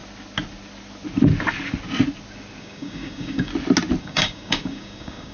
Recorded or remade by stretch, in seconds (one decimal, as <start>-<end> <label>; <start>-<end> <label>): 0.0-2.6 recorded; 2.6-3.5 remade; 3.5-4.0 recorded; 4.0-5.3 remade